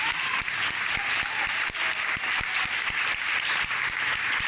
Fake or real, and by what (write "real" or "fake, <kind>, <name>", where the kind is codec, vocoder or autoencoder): real